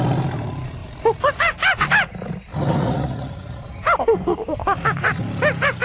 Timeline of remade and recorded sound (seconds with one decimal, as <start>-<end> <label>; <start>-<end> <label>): 0.0-2.5 recorded; 2.5-3.6 remade; 3.6-5.8 recorded